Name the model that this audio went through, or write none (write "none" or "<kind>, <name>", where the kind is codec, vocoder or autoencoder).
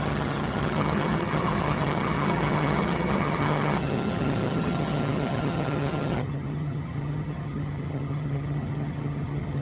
vocoder, HiFi-GAN